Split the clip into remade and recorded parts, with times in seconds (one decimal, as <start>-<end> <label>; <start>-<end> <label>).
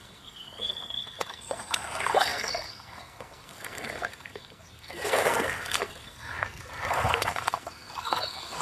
0.0-8.6 remade